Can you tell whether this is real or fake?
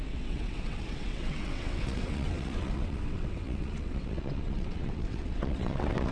fake